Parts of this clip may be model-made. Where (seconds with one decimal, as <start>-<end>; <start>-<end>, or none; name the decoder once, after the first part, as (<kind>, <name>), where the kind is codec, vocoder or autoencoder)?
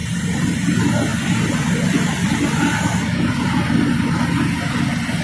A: none